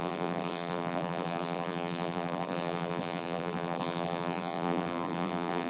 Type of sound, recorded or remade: remade